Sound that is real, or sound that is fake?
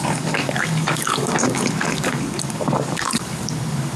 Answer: fake